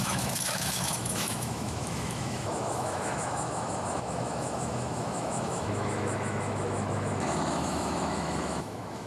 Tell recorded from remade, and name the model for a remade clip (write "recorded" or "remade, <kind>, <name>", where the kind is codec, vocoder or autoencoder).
remade, autoencoder, DAC-VAE